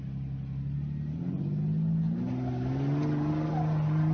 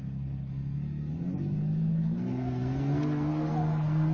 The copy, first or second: second